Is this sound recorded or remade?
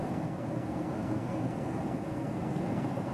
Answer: remade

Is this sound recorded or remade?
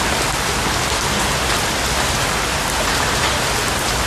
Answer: recorded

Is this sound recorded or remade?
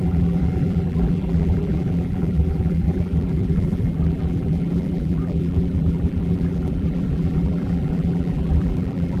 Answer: remade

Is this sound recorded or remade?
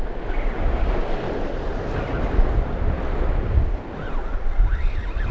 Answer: recorded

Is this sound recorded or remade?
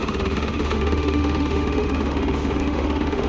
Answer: remade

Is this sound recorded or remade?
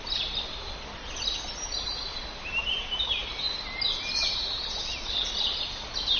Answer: recorded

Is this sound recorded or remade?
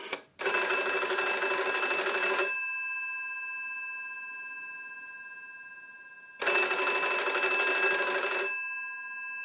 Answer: recorded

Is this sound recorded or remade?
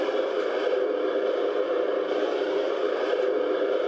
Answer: recorded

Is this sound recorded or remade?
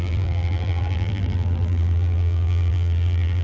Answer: remade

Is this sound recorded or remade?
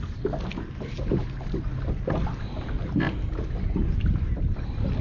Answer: recorded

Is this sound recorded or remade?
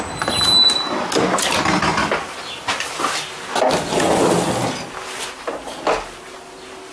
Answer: recorded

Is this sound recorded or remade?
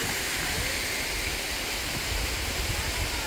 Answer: recorded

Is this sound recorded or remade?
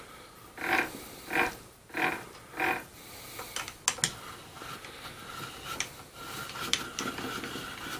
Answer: recorded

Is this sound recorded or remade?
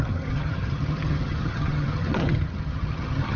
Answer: remade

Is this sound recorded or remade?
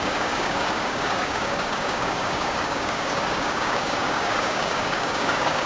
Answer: remade